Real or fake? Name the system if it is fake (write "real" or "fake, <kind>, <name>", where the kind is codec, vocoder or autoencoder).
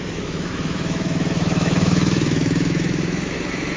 fake, autoencoder, DAC-VAE